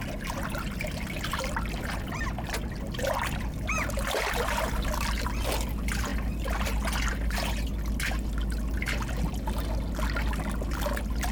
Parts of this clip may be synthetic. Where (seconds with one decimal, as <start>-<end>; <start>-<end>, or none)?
none